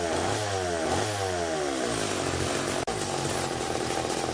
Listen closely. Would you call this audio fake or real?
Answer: real